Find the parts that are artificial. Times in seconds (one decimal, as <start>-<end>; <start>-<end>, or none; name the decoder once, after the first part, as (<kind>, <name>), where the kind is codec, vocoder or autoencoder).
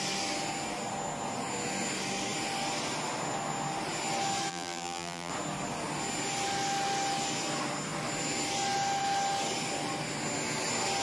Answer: 4.5-5.3 (vocoder, BigVGAN v2)